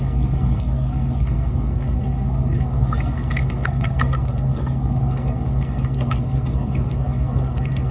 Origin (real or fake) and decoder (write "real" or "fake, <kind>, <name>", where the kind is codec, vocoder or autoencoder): fake, codec, SNAC